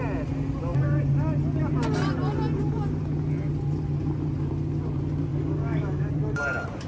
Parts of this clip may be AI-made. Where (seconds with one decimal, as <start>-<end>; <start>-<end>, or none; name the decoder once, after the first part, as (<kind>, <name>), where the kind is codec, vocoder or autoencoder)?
5.3-6.1 (codec, DAC)